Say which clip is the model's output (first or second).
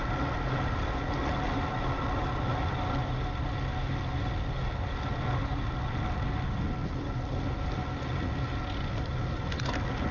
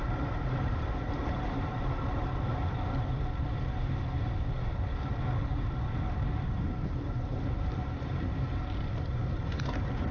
second